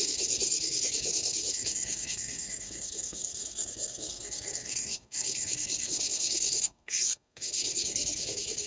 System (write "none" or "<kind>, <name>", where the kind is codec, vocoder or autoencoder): codec, SNAC